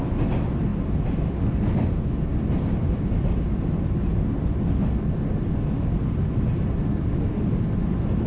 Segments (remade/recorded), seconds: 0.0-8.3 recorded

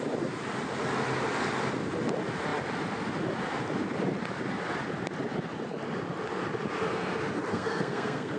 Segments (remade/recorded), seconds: 0.0-7.5 recorded; 7.5-8.4 remade

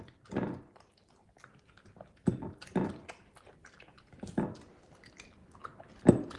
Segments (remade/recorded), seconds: 0.0-6.4 recorded